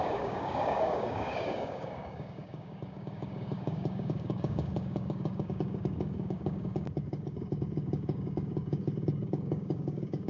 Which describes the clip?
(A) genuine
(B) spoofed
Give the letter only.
B